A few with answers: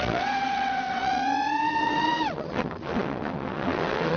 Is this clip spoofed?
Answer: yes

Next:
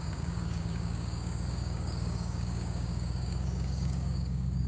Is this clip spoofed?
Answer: yes